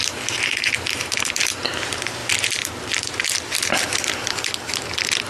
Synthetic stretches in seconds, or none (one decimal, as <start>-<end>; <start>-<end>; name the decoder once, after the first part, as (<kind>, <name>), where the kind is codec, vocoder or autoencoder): none